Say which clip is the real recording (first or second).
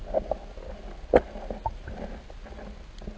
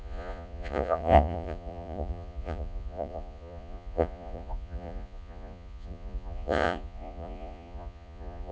first